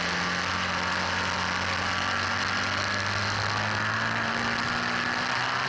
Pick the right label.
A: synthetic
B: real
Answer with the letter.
B